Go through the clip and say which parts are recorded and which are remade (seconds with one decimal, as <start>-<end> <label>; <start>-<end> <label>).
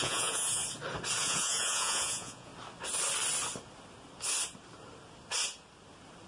0.0-0.6 remade; 0.6-1.2 recorded; 1.2-2.5 remade; 2.5-6.3 recorded